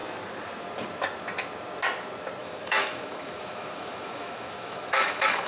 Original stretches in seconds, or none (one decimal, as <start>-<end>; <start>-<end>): 0.0-2.4